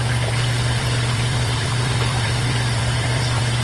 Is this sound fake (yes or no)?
yes